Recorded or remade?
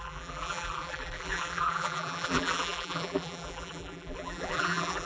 remade